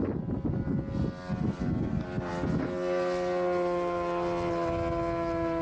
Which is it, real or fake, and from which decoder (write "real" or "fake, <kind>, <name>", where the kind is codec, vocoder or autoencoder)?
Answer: real